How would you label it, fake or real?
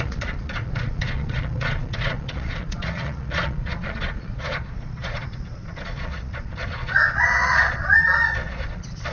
fake